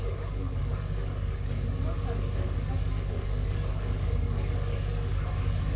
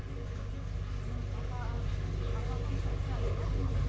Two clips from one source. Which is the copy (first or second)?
first